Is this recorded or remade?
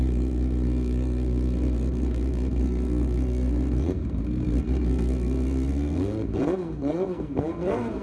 remade